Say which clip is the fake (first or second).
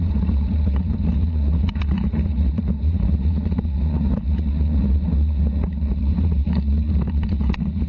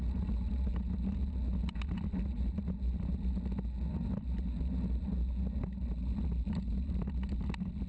first